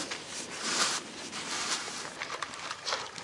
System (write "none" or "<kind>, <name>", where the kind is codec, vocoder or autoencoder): vocoder, BigVGAN v2